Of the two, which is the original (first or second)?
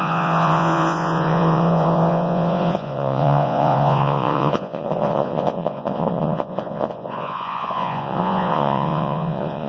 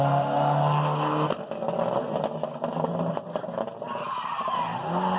second